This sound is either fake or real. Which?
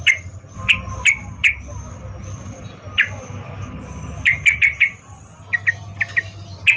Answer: real